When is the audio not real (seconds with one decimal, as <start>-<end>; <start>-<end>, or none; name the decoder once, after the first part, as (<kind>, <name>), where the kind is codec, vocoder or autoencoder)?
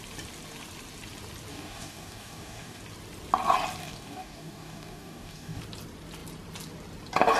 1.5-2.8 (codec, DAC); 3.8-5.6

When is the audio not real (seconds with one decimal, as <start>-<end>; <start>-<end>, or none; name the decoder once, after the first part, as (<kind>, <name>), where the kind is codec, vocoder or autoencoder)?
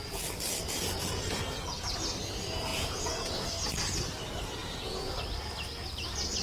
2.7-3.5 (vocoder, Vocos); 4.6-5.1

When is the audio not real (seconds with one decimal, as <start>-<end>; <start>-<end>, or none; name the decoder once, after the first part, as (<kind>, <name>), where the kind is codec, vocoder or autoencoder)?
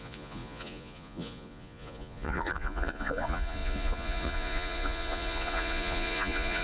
0.0-6.6 (vocoder, Vocos)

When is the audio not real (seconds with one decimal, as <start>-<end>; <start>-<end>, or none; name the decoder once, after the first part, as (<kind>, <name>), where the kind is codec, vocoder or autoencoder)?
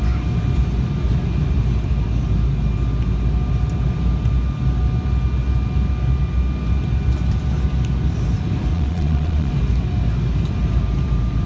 8.7-9.5 (vocoder, Vocos)